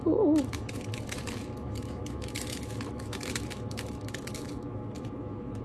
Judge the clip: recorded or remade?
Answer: remade